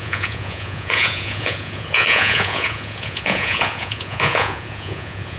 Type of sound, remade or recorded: remade